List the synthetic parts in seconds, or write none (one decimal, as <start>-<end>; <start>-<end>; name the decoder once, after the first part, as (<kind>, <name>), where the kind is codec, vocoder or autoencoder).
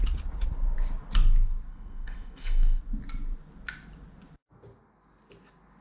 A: 1.7-2.8 (codec, SNAC)